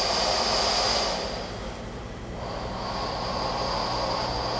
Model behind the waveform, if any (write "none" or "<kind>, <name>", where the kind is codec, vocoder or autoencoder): none